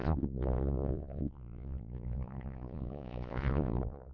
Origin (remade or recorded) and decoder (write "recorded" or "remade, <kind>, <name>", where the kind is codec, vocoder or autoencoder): remade, vocoder, Vocos